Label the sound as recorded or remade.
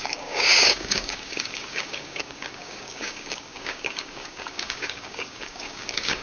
remade